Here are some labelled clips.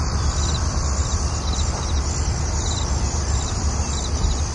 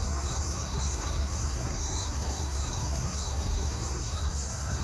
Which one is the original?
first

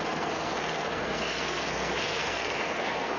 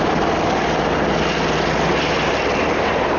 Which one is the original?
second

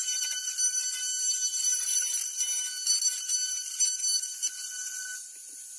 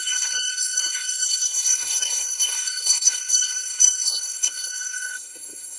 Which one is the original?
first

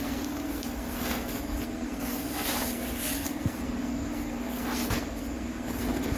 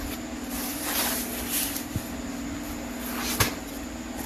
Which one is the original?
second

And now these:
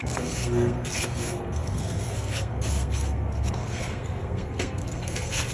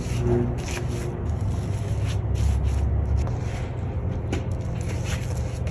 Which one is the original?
second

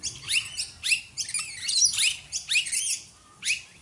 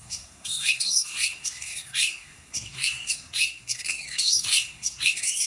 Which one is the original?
first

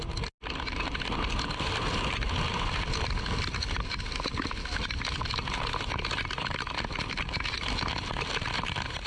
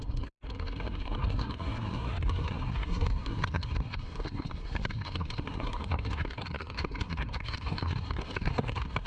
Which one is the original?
first